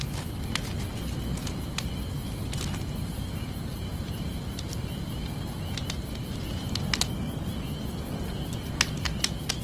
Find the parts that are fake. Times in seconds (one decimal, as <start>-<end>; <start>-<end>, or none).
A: 3.7-5.4